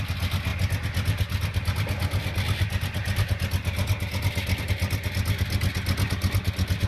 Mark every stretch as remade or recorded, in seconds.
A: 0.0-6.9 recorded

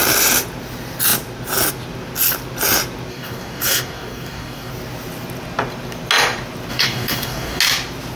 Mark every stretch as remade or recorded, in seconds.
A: 0.0-3.1 recorded; 3.1-4.7 remade; 4.7-6.7 recorded; 6.7-7.6 remade; 7.6-8.2 recorded

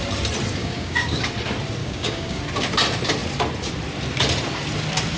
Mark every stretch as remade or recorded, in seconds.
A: 0.0-0.6 recorded; 0.6-1.2 remade; 1.2-1.8 recorded; 1.8-2.4 remade; 2.4-5.2 recorded

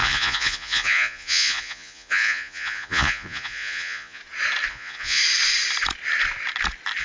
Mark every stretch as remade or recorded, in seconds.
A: 0.0-4.2 remade; 4.2-4.7 recorded; 4.7-5.2 remade; 5.2-7.0 recorded